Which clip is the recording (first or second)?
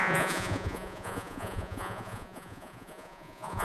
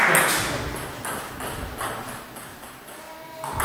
second